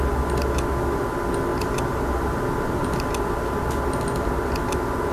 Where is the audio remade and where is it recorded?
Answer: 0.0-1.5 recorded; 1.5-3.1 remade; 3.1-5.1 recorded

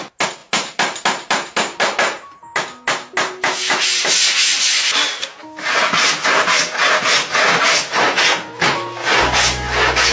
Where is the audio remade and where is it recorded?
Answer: 0.0-0.4 recorded; 0.4-2.4 remade; 2.4-4.5 recorded; 4.5-5.3 remade; 5.3-10.1 recorded

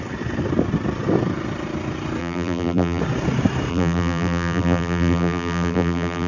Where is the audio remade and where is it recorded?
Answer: 0.0-2.2 recorded; 2.2-3.0 remade; 3.0-3.7 recorded; 3.7-6.3 remade

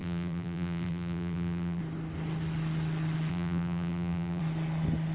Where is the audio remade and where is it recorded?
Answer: 0.0-1.8 remade; 1.8-3.3 recorded; 3.3-4.4 remade; 4.4-5.1 recorded